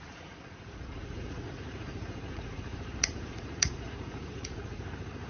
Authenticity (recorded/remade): remade